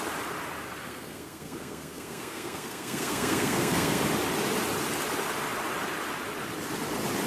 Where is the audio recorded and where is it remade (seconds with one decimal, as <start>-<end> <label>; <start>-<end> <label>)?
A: 0.0-0.8 recorded; 0.8-4.0 remade; 4.0-7.3 recorded